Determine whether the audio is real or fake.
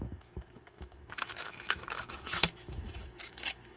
fake